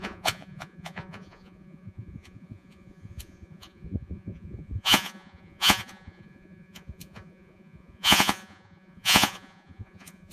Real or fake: fake